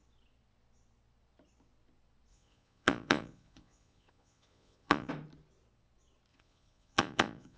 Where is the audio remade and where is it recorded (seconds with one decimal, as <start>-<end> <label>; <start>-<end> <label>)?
0.0-2.3 recorded; 2.3-5.1 remade; 5.1-6.3 recorded; 6.3-7.6 remade